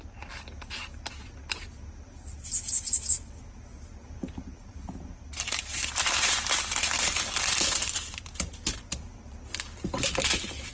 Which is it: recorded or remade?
recorded